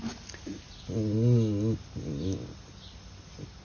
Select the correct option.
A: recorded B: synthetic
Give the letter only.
A